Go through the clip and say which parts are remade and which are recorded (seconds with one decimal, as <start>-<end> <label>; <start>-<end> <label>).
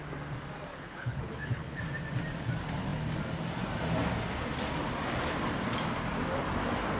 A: 0.0-0.7 recorded; 0.7-1.8 remade; 1.8-7.0 recorded